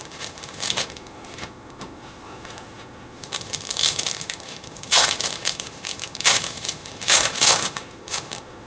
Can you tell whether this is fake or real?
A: fake